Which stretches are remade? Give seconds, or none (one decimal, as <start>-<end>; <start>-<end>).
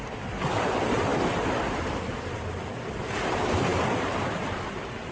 1.1-2.6